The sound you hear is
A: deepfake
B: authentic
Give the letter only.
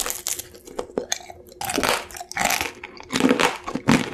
B